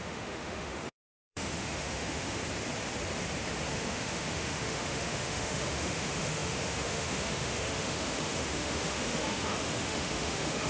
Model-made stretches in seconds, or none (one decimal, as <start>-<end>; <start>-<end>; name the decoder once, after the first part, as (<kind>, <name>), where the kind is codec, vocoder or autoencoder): 0.0-2.4 (autoencoder, DAC-VAE); 3.7-10.7